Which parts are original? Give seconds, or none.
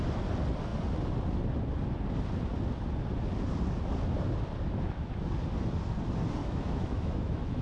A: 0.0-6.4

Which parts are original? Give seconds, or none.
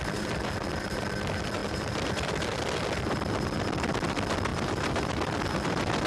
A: 0.0-4.5; 5.4-6.1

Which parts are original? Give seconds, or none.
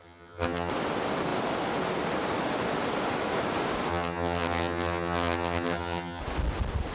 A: 0.7-3.9; 6.2-6.9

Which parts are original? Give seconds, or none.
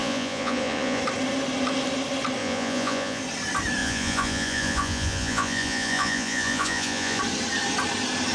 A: 1.0-2.4; 3.2-3.8; 7.2-8.3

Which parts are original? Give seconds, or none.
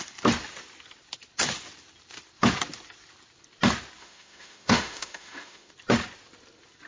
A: 0.0-4.0; 5.7-6.9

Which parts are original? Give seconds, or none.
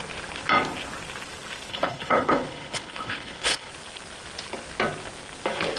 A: 0.0-1.7; 3.7-5.8